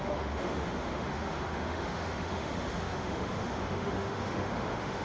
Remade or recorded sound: remade